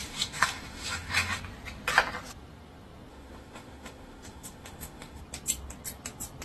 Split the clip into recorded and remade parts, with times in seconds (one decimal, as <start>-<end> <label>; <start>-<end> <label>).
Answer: 0.0-1.4 remade; 1.4-3.1 recorded; 3.1-5.2 remade; 5.2-6.4 recorded